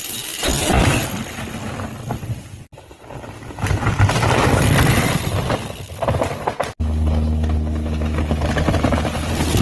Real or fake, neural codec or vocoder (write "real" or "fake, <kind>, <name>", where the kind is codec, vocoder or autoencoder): real